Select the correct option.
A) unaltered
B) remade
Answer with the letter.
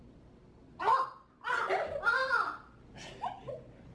A